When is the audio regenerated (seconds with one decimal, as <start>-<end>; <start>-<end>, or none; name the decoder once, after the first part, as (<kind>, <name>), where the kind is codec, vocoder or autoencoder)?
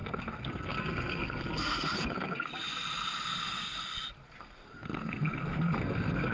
0.0-2.5 (codec, SNAC); 4.4-6.3